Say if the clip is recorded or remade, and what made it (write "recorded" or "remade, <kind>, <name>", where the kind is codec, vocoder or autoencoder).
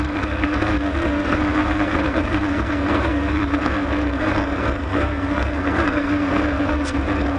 remade, codec, SNAC